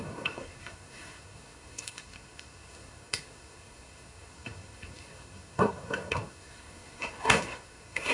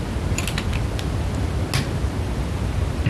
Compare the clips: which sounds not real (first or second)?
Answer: first